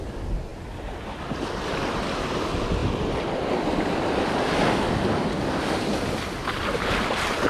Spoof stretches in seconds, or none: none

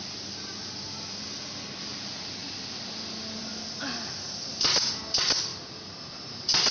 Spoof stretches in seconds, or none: none